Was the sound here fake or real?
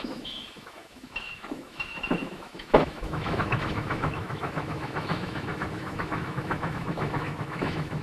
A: fake